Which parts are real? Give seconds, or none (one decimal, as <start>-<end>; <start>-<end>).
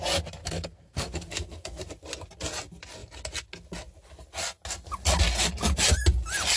0.0-0.4; 1.8-6.6